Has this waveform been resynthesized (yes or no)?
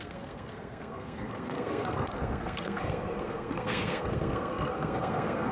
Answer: yes